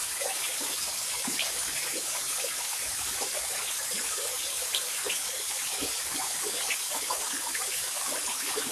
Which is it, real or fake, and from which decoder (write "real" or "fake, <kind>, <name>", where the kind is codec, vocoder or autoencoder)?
fake, codec, DAC